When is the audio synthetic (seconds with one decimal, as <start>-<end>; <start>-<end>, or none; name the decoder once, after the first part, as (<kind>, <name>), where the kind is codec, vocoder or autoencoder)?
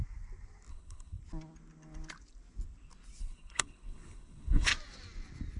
0.7-1.2 (codec, HILCodec); 3.2-4.7